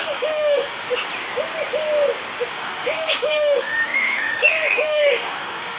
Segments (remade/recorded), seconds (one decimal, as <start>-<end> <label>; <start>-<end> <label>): 0.0-0.9 remade; 0.9-2.5 recorded; 2.5-5.8 remade

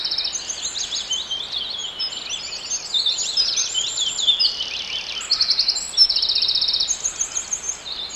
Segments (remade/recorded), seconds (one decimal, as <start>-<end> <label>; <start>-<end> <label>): 0.0-8.2 recorded

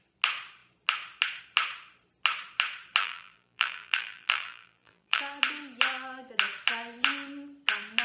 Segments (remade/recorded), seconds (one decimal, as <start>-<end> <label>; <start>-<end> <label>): 0.0-3.0 recorded; 3.0-5.2 remade; 5.2-8.0 recorded

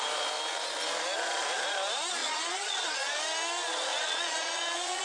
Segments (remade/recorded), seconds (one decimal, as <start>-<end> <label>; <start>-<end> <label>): 0.0-2.2 recorded; 2.2-3.2 remade; 3.2-3.9 recorded; 3.9-5.0 remade